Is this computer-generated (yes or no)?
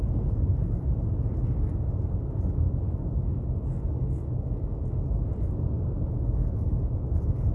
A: no